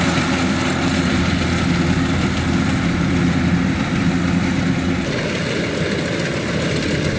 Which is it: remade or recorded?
recorded